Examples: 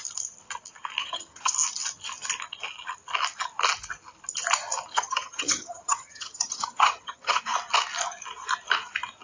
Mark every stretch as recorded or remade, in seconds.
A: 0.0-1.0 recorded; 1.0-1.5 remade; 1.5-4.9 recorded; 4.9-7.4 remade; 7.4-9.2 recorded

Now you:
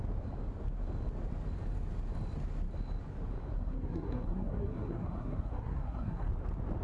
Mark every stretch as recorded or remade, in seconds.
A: 0.0-3.5 recorded; 3.5-6.3 remade; 6.3-6.8 recorded

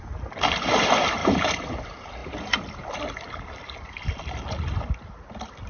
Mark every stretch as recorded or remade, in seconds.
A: 0.0-1.2 recorded; 1.2-1.7 remade; 1.7-5.7 recorded

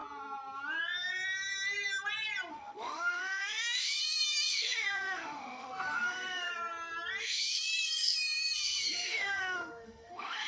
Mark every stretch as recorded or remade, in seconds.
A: 0.0-2.5 recorded; 2.5-6.5 remade; 6.5-7.2 recorded; 7.2-10.5 remade

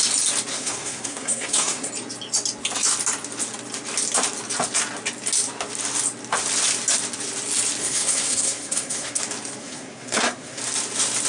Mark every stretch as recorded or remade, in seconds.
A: 0.0-0.5 recorded; 0.5-1.9 remade; 1.9-7.8 recorded; 7.8-9.2 remade; 9.2-9.6 recorded; 9.6-10.6 remade; 10.6-11.3 recorded

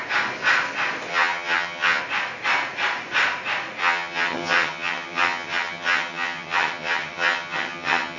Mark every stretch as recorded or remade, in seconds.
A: 0.0-1.1 recorded; 1.1-2.0 remade; 2.0-3.8 recorded; 3.8-8.2 remade